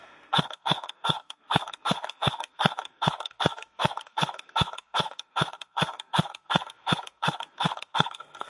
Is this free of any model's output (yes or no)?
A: no